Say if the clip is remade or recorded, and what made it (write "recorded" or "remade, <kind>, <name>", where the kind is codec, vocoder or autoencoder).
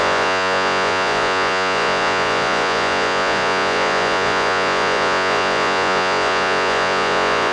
remade, vocoder, Vocos